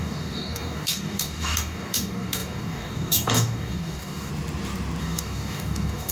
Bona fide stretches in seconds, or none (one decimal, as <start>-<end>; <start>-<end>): 4.3-5.0